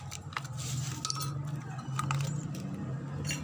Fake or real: real